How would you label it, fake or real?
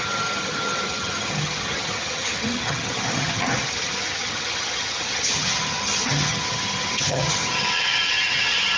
fake